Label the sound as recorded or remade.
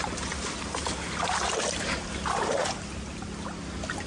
recorded